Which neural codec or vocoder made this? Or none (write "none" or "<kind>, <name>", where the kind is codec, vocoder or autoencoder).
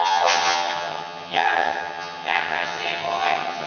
vocoder, HiFi-GAN